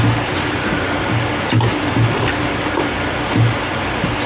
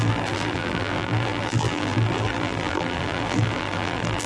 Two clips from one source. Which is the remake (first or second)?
second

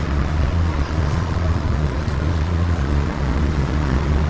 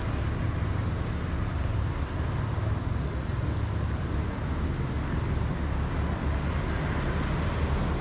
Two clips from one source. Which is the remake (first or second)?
first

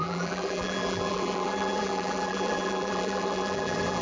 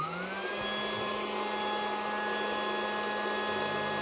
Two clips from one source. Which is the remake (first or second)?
first